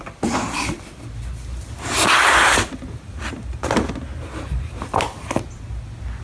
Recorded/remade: recorded